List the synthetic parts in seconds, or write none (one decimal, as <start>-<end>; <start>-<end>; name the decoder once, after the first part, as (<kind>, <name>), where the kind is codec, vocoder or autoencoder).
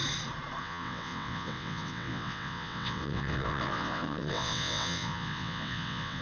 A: 0.6-6.2 (vocoder, WaveNeXt)